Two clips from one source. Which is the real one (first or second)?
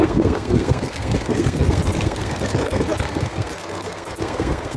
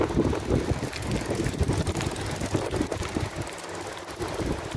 second